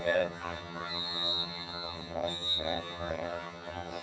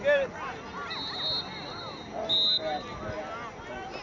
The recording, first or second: second